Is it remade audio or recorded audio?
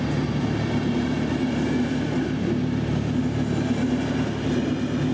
recorded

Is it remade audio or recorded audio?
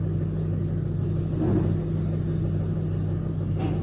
recorded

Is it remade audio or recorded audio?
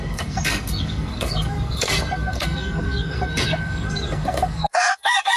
remade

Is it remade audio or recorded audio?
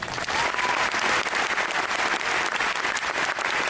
recorded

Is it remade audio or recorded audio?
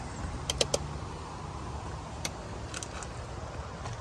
recorded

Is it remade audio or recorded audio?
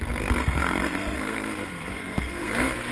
remade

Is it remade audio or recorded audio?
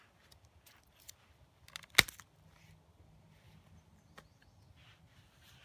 recorded